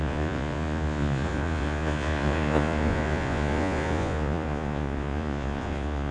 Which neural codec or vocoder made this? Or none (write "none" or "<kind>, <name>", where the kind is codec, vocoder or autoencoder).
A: vocoder, Vocos